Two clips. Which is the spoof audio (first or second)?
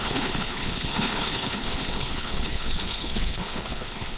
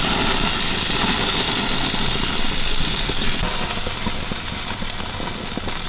first